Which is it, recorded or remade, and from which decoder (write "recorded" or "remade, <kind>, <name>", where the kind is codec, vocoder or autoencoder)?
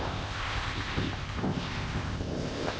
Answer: remade, codec, ZipCodec